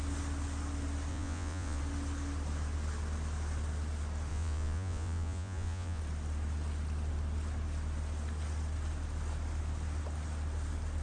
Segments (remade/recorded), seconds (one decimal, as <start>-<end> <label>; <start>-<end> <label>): 0.0-1.1 recorded; 1.1-1.8 remade; 1.8-4.3 recorded; 4.3-6.0 remade; 6.0-11.0 recorded